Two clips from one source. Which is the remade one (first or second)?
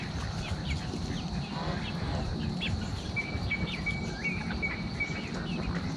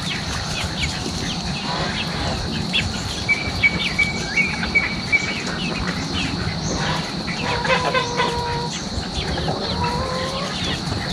second